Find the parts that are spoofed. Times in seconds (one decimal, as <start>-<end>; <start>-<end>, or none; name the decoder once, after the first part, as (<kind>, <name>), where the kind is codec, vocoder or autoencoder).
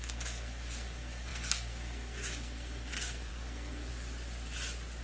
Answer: 0.0-3.9 (codec, SNAC)